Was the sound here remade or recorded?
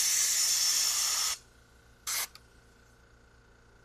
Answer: recorded